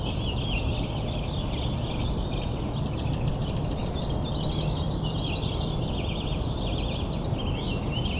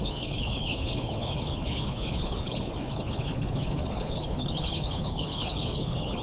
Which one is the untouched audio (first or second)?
first